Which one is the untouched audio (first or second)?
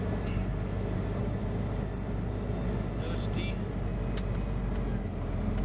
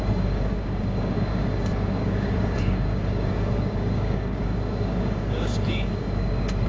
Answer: first